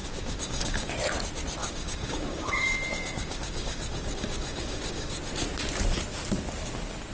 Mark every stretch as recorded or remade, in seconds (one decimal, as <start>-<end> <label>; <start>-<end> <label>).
0.0-0.9 remade; 0.9-1.6 recorded; 1.6-5.2 remade; 5.2-7.1 recorded